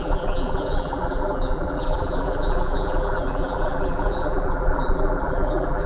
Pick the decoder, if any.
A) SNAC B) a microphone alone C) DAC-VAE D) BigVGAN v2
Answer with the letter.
D